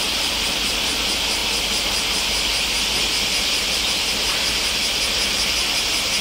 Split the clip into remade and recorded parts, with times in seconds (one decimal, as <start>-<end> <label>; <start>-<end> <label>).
0.0-1.4 remade; 1.4-3.8 recorded; 3.8-6.2 remade